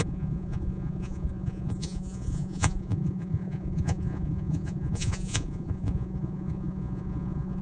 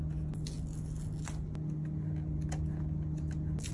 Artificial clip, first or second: first